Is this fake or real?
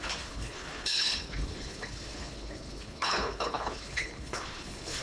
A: fake